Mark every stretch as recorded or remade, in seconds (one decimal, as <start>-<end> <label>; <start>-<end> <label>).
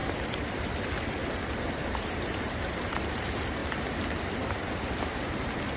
0.0-1.2 remade; 1.2-2.0 recorded; 2.0-3.6 remade; 3.6-4.8 recorded; 4.8-5.8 remade